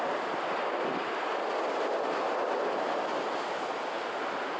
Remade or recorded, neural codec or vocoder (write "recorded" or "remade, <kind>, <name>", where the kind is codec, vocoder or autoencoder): recorded